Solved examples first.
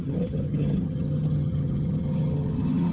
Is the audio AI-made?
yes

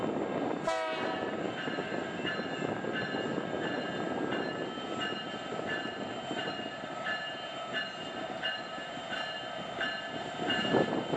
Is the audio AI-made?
no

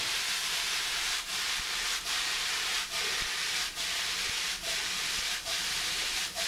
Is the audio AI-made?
yes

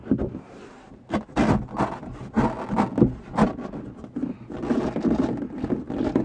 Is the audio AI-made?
no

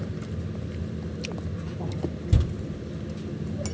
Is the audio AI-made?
no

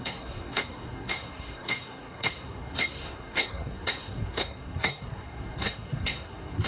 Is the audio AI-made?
yes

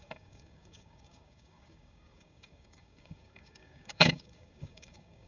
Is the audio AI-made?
yes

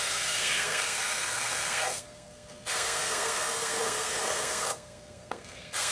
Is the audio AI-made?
yes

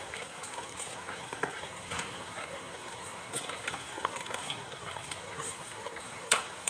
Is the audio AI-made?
yes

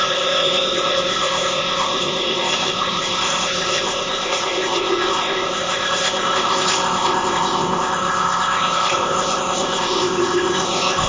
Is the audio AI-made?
yes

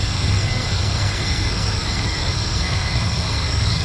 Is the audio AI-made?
yes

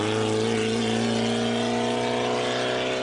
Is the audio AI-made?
no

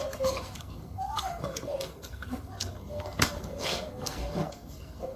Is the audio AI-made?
yes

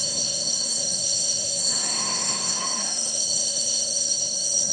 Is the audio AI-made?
yes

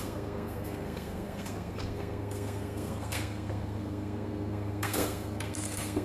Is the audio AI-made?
yes